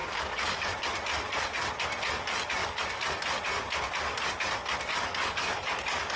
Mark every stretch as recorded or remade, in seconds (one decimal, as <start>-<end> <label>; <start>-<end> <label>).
0.0-0.7 remade; 0.7-2.6 recorded; 2.6-3.2 remade; 3.2-4.9 recorded; 4.9-6.2 remade

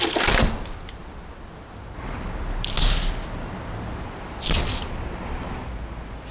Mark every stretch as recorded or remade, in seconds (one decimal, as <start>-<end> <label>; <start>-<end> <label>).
0.0-6.3 recorded

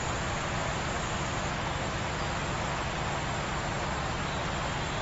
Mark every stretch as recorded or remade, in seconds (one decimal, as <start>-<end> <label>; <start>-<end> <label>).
0.0-5.0 recorded